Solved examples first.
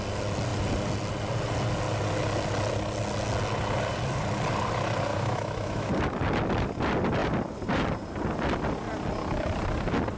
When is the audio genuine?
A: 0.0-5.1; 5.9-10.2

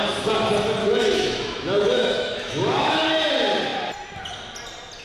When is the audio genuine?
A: 0.0-0.8; 3.3-5.0